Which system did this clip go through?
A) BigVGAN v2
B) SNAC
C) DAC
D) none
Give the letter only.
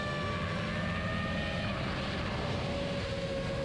D